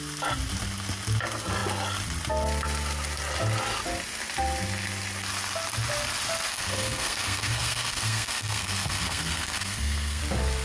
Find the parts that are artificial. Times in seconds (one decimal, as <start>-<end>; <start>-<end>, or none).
6.5-10.2